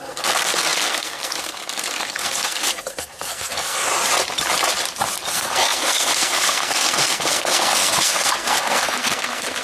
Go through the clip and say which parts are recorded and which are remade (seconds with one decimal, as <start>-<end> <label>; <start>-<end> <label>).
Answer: 0.0-3.9 remade; 3.9-5.3 recorded; 5.3-9.6 remade